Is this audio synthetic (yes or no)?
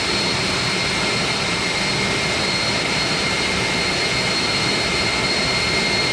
no